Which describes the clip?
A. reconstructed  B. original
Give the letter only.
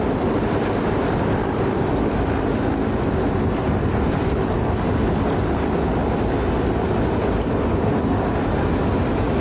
B